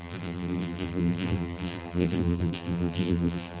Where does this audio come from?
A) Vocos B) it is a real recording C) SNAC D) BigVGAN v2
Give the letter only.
D